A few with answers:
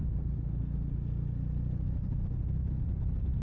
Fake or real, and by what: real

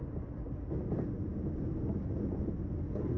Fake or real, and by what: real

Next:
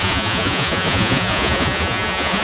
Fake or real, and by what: fake, vocoder, Vocos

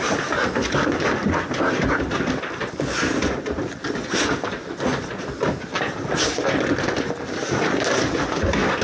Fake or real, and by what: real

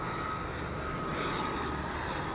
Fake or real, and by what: real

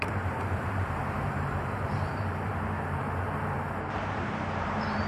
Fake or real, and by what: fake, vocoder, BigVGAN v2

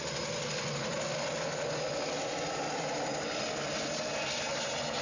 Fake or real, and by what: real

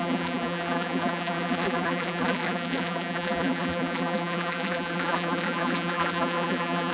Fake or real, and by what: fake, vocoder, BigVGAN v2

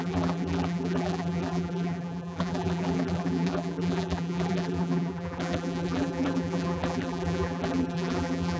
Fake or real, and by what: fake, vocoder, BigVGAN v2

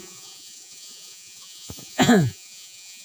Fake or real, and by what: fake, vocoder, Vocos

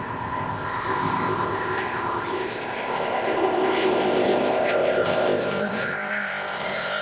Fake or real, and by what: fake, codec, ZipCodec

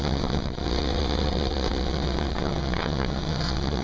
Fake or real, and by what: fake, vocoder, WaveNeXt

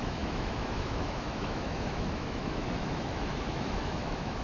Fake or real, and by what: fake, autoencoder, DAC-VAE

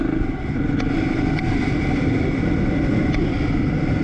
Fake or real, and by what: real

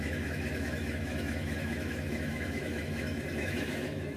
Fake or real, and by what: fake, autoencoder, DAC-VAE